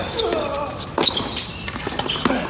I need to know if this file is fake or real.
real